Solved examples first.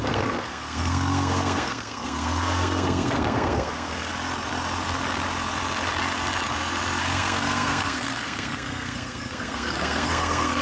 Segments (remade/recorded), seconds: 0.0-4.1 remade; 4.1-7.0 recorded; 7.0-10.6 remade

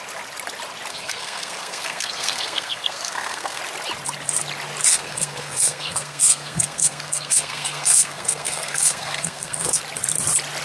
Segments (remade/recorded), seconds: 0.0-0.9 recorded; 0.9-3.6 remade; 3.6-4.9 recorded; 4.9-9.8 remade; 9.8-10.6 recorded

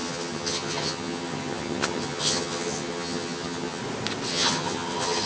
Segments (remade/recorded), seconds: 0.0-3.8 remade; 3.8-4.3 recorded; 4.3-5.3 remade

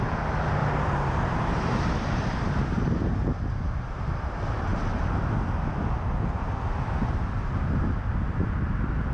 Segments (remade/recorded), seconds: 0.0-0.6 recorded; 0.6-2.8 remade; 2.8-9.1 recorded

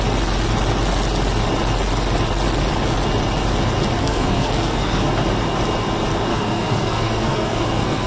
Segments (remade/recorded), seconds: 0.0-4.0 recorded; 4.0-5.1 remade; 5.1-6.3 recorded; 6.3-8.1 remade

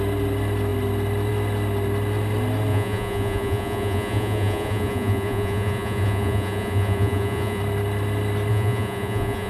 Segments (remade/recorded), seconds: 0.0-2.7 recorded; 2.7-7.6 remade; 7.6-8.5 recorded; 8.5-9.5 remade

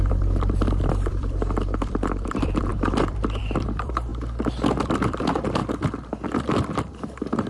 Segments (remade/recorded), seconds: 0.0-4.1 remade; 4.1-4.8 recorded; 4.8-5.6 remade; 5.6-6.8 recorded; 6.8-7.5 remade